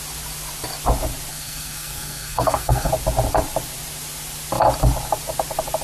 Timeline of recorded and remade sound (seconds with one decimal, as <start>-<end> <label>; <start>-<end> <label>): 0.0-1.3 recorded; 1.3-2.9 remade; 2.9-5.8 recorded